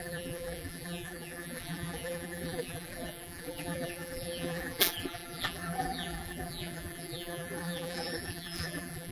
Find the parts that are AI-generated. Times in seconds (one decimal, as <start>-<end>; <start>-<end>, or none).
0.0-9.1